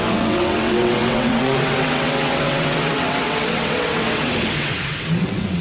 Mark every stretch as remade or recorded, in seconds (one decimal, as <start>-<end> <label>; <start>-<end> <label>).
0.0-5.6 remade